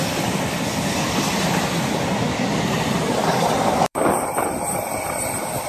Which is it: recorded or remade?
remade